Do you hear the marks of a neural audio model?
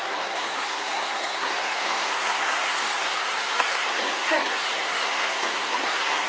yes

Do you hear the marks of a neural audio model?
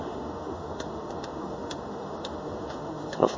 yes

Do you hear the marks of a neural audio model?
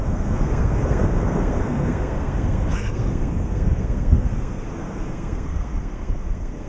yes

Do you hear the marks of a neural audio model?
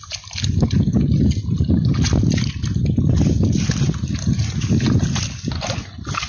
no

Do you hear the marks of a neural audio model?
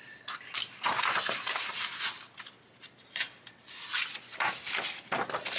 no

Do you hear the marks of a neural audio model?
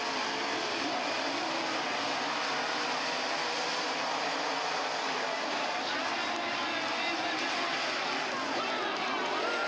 no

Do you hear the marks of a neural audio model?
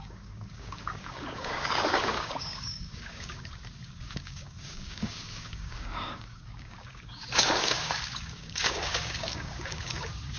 yes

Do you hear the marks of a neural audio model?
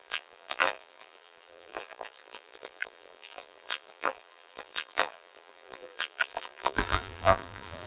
yes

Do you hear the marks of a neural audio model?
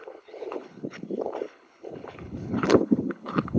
yes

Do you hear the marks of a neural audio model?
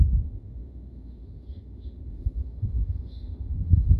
yes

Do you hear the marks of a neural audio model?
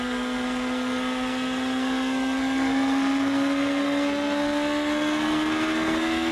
yes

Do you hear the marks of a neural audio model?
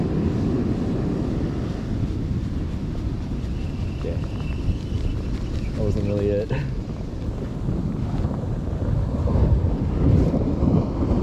no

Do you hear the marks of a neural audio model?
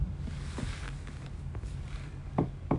yes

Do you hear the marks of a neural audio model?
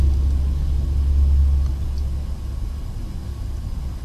no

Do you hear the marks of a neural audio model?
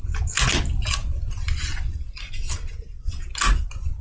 no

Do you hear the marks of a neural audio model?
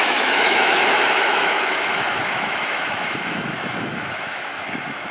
yes